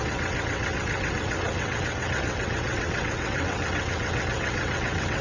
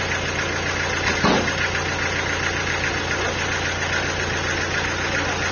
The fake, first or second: first